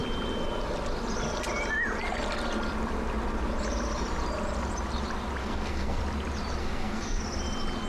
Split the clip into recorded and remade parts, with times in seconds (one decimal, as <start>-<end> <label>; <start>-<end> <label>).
0.0-5.4 recorded; 5.4-6.0 remade; 6.0-6.6 recorded; 6.6-7.2 remade; 7.2-7.9 recorded